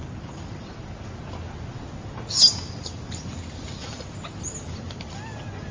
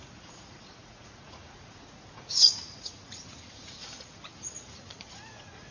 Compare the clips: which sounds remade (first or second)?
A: second